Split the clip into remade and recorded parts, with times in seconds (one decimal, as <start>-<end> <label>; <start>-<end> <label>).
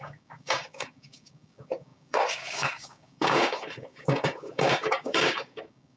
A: 0.0-6.0 remade